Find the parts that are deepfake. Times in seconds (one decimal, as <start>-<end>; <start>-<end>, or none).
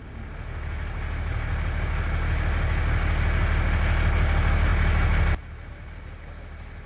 none